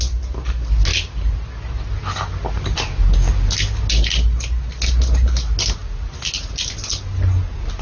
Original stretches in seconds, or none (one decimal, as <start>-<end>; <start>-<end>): 0.0-7.8